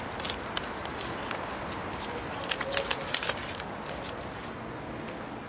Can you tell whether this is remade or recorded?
recorded